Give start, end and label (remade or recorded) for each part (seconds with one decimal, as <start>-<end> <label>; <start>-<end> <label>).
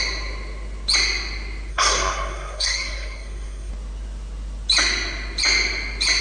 0.0-1.7 recorded; 1.7-3.7 remade; 3.7-6.2 recorded